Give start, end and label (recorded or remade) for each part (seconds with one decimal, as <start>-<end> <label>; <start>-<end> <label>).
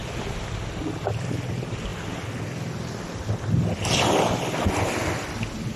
0.0-5.8 recorded